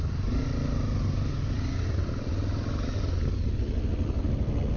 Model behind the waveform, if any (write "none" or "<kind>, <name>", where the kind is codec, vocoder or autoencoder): none